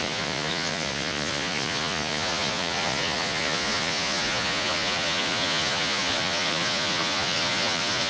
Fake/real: fake